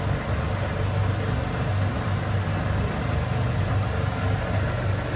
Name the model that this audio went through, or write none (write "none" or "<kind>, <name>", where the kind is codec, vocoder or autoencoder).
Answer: none